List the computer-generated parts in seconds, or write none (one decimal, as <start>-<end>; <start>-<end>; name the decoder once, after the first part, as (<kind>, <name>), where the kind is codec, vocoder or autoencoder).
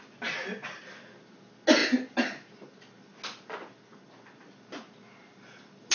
none